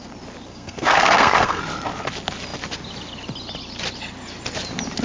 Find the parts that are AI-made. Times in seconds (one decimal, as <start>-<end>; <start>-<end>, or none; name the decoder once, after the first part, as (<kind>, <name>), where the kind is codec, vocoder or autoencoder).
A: 0.5-1.6 (codec, SNAC)